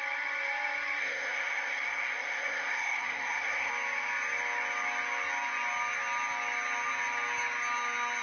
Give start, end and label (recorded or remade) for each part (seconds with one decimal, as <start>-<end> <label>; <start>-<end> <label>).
0.0-1.0 recorded; 1.0-3.7 remade; 3.7-8.2 recorded